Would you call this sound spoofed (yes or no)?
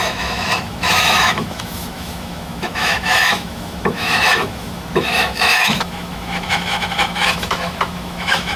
yes